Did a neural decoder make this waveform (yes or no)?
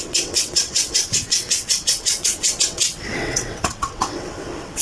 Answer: yes